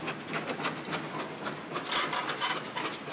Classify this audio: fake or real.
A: real